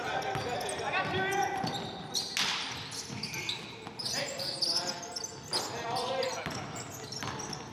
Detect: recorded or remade recorded